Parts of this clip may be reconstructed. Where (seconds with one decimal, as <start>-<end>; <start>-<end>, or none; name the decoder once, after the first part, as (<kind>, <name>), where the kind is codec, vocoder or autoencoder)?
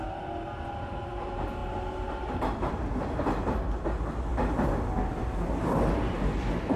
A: none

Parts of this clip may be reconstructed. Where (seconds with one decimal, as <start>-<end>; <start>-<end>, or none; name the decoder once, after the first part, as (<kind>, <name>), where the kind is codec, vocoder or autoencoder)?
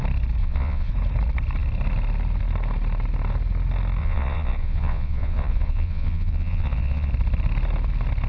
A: 0.4-0.9 (vocoder, Vocos); 4.0-7.1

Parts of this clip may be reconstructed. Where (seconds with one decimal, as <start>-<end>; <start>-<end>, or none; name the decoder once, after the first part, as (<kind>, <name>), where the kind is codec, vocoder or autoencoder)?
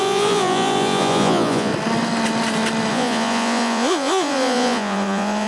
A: 0.0-1.7 (vocoder, Vocos); 2.9-5.5